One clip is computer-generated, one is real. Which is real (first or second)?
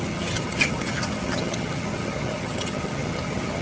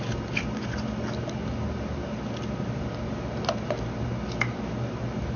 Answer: second